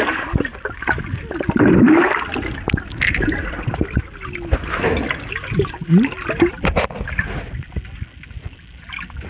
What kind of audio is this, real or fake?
real